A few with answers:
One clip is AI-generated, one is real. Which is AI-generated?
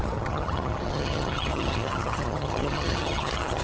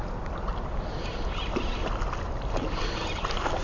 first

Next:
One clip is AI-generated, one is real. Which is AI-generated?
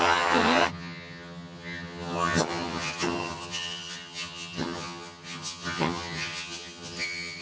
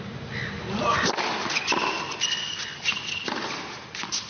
first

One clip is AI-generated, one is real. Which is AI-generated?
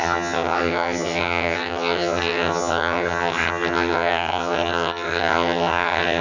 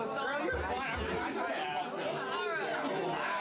first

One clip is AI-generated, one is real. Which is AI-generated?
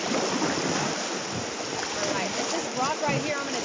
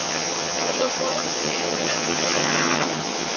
second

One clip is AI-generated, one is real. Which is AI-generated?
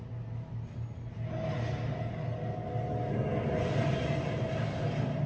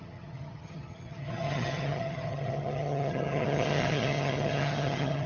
second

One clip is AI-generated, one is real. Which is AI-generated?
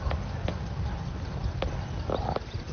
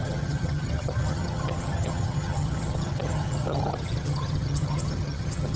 second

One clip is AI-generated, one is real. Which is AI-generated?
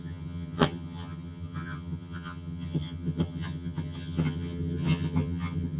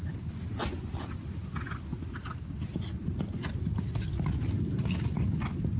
first